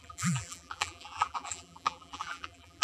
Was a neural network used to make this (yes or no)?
yes